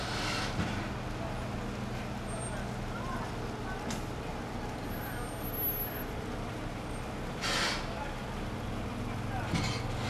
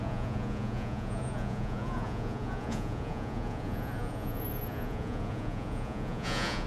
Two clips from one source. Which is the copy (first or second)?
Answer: second